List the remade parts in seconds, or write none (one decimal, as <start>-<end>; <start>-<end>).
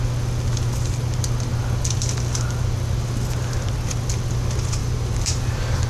4.8-5.9